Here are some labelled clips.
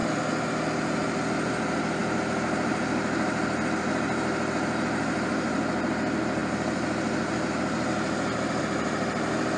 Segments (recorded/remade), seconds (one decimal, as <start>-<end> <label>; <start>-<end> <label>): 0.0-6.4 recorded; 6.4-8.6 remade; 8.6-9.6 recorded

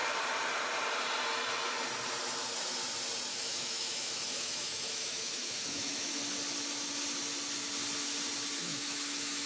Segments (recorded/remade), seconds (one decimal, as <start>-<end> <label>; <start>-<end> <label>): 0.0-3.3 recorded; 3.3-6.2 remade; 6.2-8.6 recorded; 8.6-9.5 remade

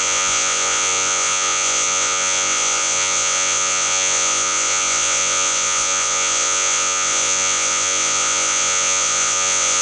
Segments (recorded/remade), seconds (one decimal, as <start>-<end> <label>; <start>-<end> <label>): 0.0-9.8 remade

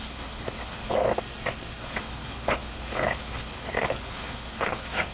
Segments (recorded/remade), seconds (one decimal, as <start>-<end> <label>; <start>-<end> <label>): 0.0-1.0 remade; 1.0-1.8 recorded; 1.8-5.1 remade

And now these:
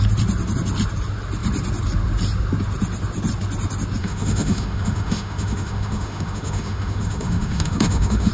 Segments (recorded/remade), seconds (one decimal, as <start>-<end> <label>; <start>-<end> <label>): 0.0-4.0 recorded; 4.0-8.3 remade

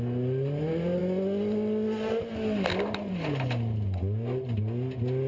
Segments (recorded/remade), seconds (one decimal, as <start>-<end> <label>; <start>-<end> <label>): 0.0-5.3 recorded

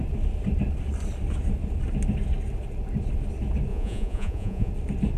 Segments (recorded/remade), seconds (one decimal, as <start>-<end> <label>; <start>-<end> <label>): 0.0-3.7 recorded; 3.7-4.7 remade; 4.7-5.2 recorded